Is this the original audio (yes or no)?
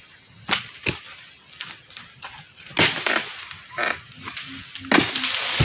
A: yes